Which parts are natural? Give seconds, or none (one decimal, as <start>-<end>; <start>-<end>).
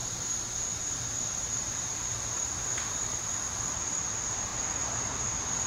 0.0-5.7